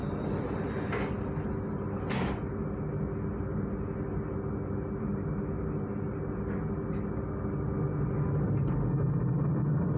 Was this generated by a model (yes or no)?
no